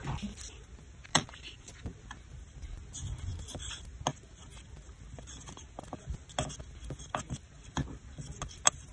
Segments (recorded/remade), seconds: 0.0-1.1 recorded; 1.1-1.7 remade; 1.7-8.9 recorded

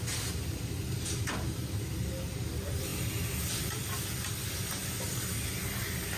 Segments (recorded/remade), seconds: 0.0-6.2 recorded

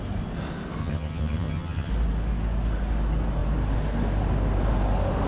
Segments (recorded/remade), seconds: 0.0-0.8 recorded; 0.8-1.9 remade; 1.9-5.3 recorded

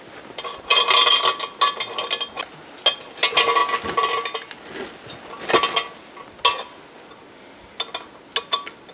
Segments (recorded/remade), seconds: 0.0-8.9 recorded

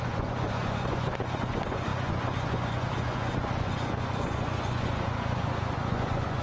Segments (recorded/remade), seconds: 0.0-6.4 remade

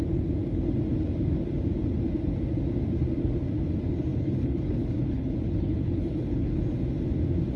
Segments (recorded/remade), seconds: 0.0-4.1 recorded; 4.1-6.6 remade; 6.6-7.6 recorded

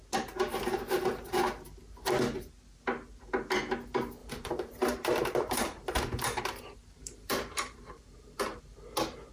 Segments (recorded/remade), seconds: 0.0-4.2 recorded; 4.2-8.6 remade; 8.6-9.3 recorded

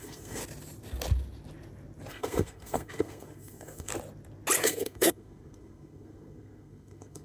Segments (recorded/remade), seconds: 0.0-0.4 remade; 0.4-2.1 recorded; 2.1-3.9 remade; 3.9-4.6 recorded; 4.6-7.2 remade